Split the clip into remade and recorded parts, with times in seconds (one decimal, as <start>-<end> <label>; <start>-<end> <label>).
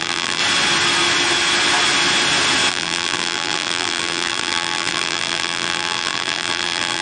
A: 0.0-0.4 remade; 0.4-2.7 recorded; 2.7-7.0 remade